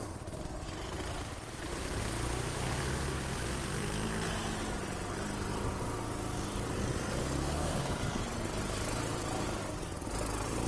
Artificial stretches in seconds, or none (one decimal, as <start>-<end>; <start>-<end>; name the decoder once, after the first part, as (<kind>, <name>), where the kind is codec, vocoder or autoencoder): 7.2-7.8 (codec, SNAC)